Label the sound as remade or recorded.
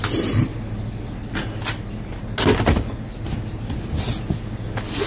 recorded